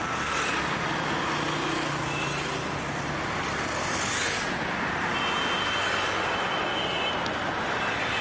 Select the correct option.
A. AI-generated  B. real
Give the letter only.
B